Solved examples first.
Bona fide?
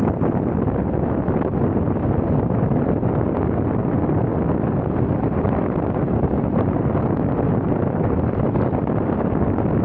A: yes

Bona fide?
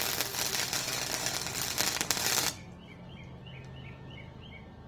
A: yes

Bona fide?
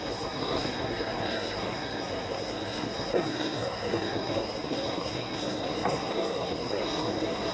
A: no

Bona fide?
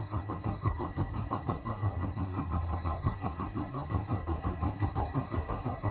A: no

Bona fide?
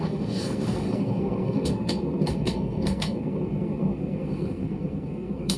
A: no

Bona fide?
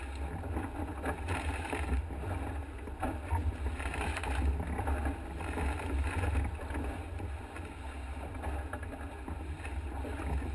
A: yes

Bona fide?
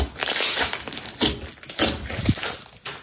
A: yes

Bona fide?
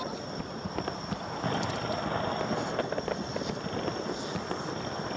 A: yes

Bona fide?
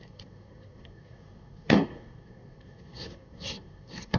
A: no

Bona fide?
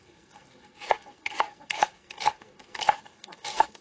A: no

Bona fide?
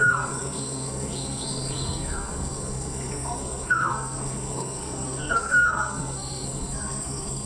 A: no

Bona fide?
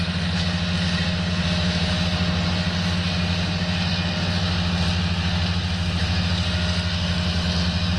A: yes